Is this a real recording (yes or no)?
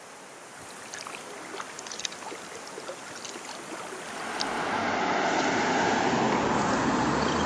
yes